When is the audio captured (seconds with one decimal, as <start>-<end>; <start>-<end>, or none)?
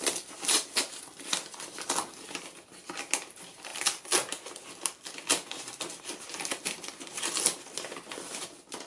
0.0-8.9